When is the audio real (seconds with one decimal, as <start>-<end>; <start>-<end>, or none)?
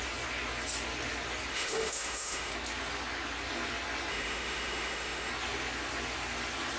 0.0-1.5; 2.5-4.1; 5.3-6.8